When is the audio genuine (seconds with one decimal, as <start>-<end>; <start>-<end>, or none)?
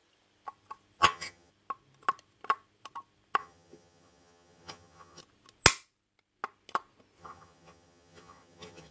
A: 0.0-1.0; 1.5-3.4; 5.2-7.2